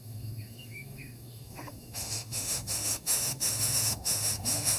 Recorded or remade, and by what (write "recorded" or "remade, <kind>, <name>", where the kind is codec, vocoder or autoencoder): remade, autoencoder, DAC-VAE